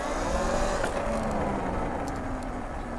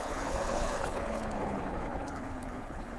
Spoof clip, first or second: second